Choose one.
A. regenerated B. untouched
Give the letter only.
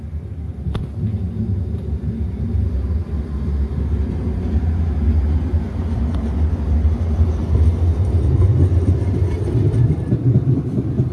B